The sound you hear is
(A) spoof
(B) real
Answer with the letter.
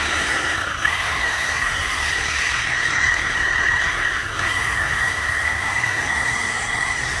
A